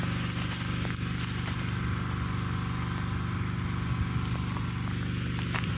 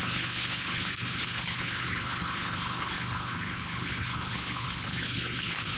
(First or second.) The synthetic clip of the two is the second